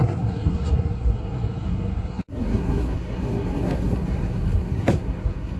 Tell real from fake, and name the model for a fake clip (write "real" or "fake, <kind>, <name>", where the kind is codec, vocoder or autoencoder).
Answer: fake, codec, SNAC